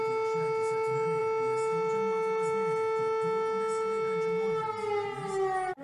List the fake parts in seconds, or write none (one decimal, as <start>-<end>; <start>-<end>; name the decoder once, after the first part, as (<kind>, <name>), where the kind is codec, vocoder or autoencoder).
none